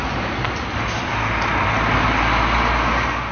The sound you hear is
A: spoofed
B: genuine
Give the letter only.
B